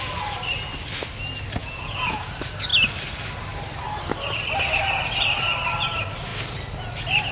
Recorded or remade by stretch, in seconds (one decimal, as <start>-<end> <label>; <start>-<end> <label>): 0.0-1.6 recorded; 1.6-2.3 remade; 2.3-7.3 recorded